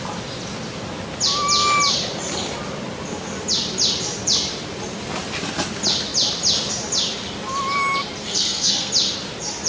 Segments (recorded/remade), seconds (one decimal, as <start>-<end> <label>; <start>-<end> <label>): 0.0-8.2 recorded; 8.2-8.9 remade; 8.9-9.7 recorded